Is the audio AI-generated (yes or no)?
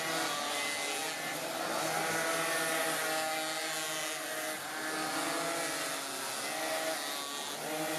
no